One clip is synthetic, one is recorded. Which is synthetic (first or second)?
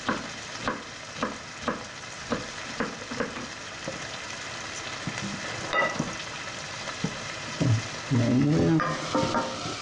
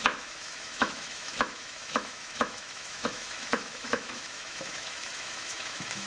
second